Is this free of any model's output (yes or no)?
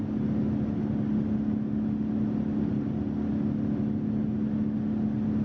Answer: yes